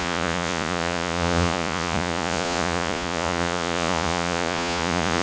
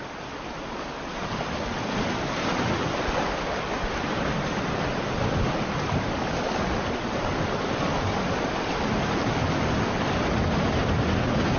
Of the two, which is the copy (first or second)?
first